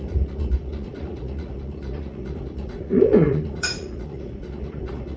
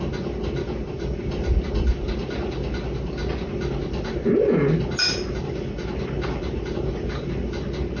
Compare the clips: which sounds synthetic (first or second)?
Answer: first